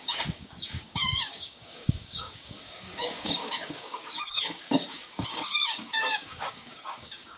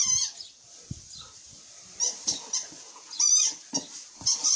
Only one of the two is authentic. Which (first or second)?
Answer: second